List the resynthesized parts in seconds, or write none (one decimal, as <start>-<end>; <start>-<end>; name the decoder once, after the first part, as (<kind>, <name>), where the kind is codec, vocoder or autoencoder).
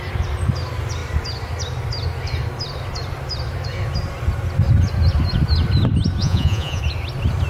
6.2-6.8 (vocoder, Vocos)